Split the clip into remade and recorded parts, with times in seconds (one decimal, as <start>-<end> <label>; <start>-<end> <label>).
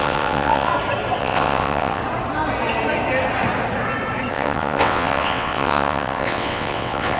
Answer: 0.0-0.7 remade; 0.7-1.2 recorded; 1.2-2.0 remade; 2.0-4.3 recorded; 4.3-7.2 remade